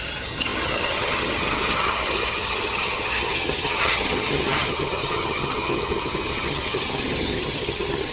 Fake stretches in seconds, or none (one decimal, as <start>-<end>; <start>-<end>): 0.0-8.1